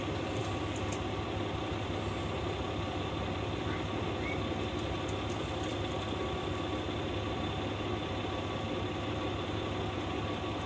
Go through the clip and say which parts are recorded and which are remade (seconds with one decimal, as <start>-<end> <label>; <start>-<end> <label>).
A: 0.0-10.7 recorded